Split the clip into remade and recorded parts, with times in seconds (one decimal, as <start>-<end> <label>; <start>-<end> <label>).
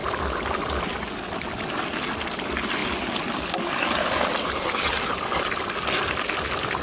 0.0-6.8 recorded